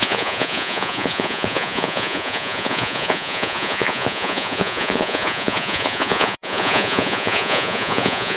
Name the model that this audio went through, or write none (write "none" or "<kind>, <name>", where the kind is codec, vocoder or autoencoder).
vocoder, Vocos